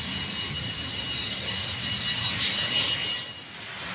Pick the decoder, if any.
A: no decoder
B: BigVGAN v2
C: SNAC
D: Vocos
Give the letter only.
A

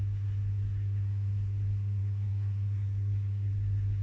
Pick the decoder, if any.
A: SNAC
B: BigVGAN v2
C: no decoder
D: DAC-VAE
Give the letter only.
A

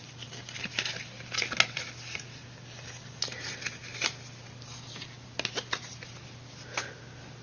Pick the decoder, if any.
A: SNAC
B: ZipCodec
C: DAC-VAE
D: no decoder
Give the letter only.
D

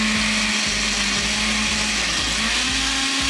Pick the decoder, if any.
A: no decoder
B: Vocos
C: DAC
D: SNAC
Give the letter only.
A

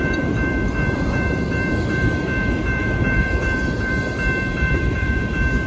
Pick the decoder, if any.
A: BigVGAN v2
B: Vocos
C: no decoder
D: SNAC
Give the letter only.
A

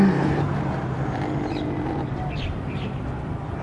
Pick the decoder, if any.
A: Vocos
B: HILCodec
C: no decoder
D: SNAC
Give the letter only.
C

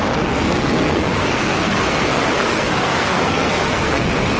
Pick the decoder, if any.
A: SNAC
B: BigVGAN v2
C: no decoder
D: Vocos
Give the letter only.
A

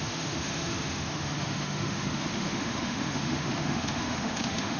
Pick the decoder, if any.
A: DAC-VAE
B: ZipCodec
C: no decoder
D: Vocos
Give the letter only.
A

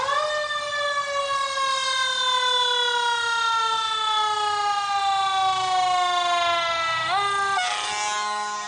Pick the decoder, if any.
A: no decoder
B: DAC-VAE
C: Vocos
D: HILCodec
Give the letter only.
A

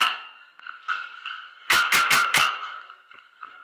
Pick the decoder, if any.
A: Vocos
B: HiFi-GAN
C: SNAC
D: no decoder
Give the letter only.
C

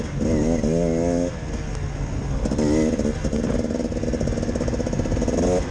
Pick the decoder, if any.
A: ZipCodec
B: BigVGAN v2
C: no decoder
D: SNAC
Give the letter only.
C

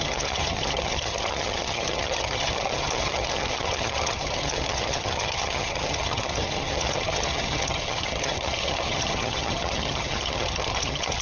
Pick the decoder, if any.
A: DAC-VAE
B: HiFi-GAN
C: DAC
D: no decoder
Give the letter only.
B